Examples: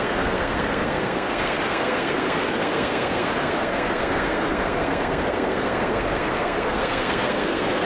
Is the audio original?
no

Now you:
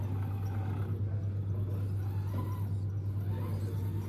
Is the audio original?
yes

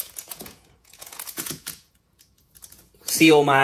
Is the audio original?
no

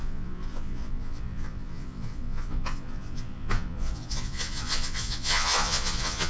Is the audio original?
no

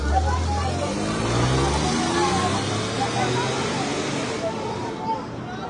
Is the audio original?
yes